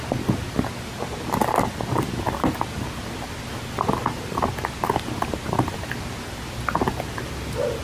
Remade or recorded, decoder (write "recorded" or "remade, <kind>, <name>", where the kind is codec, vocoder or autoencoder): recorded